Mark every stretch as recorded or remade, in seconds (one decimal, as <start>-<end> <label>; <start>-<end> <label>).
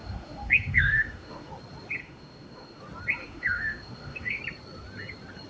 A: 0.0-1.5 remade; 1.5-2.0 recorded; 2.0-2.8 remade; 2.8-3.2 recorded; 3.2-4.4 remade; 4.4-5.5 recorded